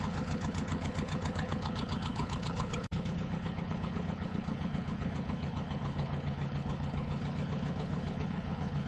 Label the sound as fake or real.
fake